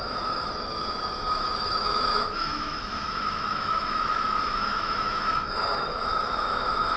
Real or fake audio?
fake